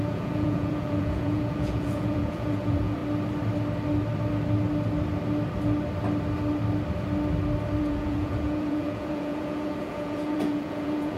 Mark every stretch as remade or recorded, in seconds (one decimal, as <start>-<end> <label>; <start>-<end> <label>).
0.0-3.0 remade; 3.0-7.8 recorded; 7.8-11.2 remade